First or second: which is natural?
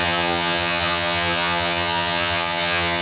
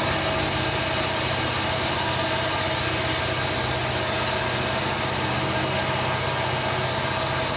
second